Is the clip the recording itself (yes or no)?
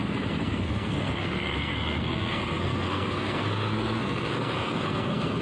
no